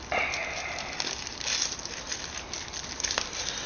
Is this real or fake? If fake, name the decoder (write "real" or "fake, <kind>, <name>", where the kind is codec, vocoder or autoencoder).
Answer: real